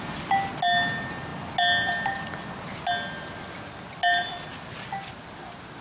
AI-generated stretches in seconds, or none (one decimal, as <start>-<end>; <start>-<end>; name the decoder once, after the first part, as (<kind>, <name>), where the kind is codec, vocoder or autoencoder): none